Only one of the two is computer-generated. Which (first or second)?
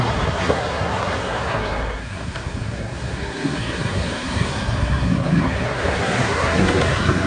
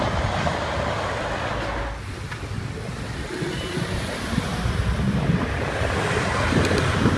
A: first